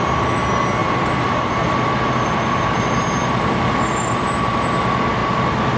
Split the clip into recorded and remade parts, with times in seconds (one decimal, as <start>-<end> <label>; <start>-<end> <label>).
0.0-0.8 recorded; 0.8-4.3 remade; 4.3-5.2 recorded; 5.2-5.8 remade